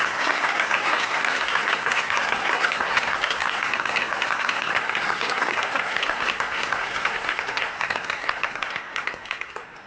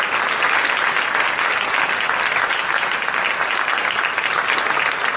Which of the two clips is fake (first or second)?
first